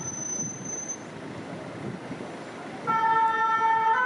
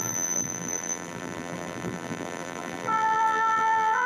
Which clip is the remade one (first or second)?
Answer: second